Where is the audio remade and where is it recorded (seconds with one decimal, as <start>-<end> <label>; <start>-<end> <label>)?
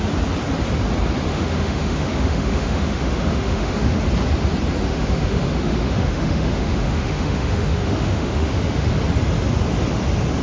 0.0-1.3 recorded; 1.3-4.0 remade; 4.0-4.9 recorded; 4.9-8.9 remade; 8.9-10.4 recorded